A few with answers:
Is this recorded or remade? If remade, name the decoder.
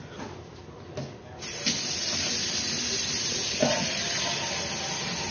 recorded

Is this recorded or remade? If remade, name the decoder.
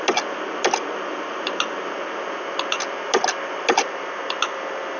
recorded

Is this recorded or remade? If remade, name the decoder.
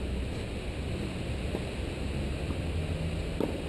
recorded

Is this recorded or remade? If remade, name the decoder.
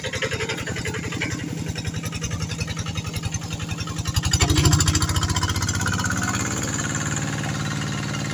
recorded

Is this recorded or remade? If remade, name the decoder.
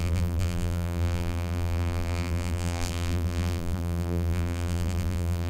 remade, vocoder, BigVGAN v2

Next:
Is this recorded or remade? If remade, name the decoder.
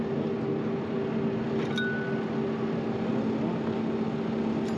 recorded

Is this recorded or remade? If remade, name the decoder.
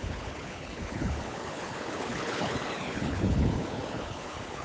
remade, codec, HILCodec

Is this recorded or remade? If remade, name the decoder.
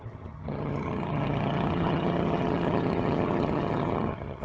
remade, vocoder, HiFi-GAN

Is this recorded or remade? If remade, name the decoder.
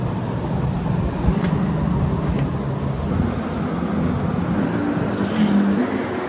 recorded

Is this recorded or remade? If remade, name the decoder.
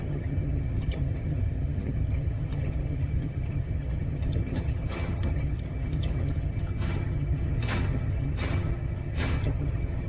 remade, vocoder, HiFi-GAN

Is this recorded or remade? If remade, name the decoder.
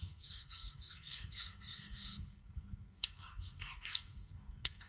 remade, codec, SNAC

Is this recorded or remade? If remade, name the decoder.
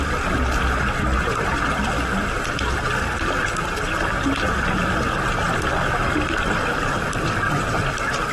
recorded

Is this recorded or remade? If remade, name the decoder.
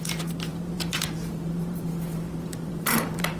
remade, vocoder, BigVGAN v2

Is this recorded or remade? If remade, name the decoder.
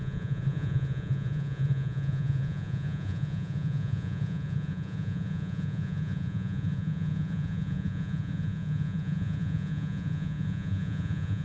remade, vocoder, Vocos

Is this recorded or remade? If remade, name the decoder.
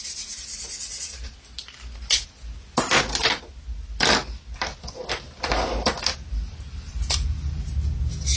recorded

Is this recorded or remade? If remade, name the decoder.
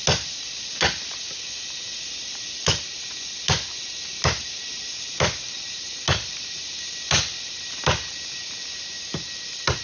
recorded